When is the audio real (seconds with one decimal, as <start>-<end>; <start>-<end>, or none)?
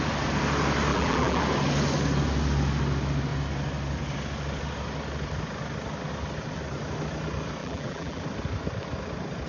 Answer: 0.0-0.9; 1.4-7.6; 8.2-9.5